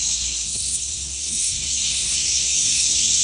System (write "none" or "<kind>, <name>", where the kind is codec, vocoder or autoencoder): codec, SNAC